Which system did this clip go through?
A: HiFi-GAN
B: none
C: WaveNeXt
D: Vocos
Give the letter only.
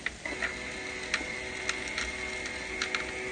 B